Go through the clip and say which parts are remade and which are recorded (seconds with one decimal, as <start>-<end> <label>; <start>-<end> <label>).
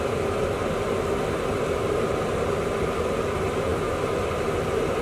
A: 0.0-5.0 recorded